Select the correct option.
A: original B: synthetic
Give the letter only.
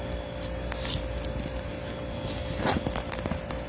A